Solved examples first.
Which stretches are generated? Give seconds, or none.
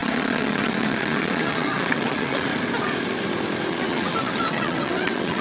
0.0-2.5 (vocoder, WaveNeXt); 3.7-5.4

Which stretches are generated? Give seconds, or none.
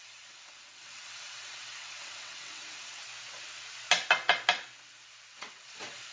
0.0-3.0 (vocoder, WaveNeXt); 5.3-6.1